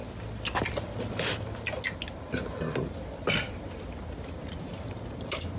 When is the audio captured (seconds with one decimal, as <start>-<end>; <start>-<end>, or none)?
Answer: 0.0-3.4